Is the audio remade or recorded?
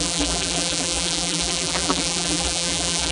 remade